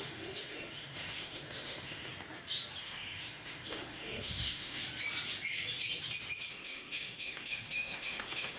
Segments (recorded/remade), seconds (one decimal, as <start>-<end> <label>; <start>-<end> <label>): 0.0-2.1 remade; 2.1-2.8 recorded; 2.8-4.8 remade; 4.8-6.5 recorded; 6.5-8.6 remade